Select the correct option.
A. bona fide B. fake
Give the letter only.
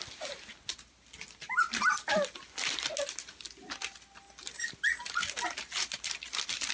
A